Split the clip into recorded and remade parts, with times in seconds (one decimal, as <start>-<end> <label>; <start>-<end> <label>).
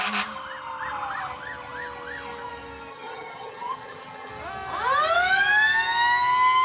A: 0.0-2.9 recorded; 2.9-4.3 remade; 4.3-6.6 recorded